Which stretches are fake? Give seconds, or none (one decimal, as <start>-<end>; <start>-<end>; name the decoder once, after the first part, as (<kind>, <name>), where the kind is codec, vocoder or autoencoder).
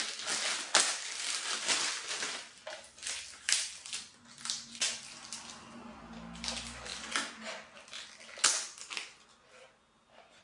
none